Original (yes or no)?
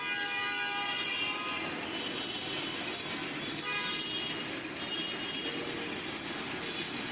yes